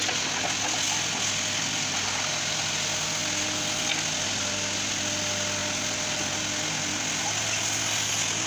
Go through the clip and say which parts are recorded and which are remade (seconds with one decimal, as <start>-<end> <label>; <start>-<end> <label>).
0.0-8.5 recorded